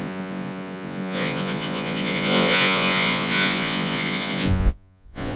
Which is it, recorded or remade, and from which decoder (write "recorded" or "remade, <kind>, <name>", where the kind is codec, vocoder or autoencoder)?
remade, vocoder, Vocos